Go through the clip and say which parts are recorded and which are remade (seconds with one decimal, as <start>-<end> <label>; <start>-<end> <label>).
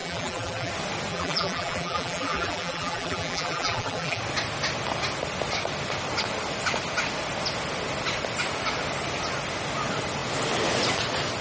0.0-0.7 remade; 0.7-1.1 recorded; 1.1-4.2 remade; 4.2-11.4 recorded